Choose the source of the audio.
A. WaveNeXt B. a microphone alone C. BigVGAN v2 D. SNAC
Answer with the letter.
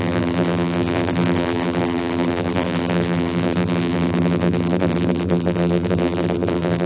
C